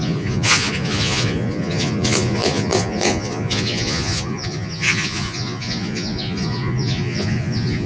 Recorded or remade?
remade